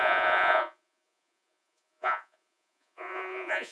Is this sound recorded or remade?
remade